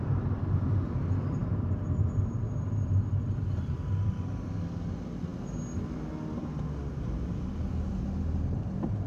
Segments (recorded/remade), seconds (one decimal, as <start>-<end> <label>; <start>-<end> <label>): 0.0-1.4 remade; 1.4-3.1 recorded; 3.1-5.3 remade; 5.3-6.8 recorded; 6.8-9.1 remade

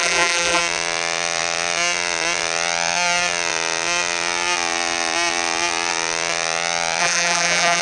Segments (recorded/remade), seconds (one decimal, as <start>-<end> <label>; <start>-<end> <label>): 0.0-0.6 remade; 0.6-7.0 recorded; 7.0-7.8 remade

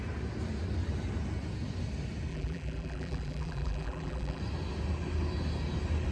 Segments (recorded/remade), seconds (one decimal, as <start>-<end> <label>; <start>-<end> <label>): 0.0-2.3 recorded; 2.3-4.4 remade; 4.4-6.1 recorded

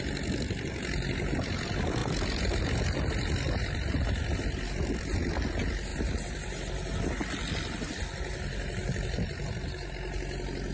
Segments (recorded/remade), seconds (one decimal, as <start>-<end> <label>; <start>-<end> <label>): 0.0-10.7 recorded